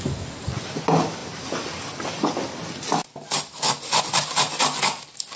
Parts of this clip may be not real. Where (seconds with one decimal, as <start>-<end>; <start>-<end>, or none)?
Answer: none